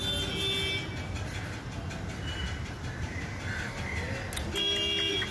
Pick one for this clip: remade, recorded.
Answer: recorded